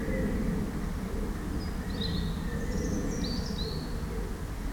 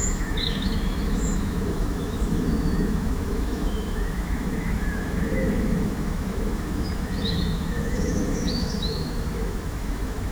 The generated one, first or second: second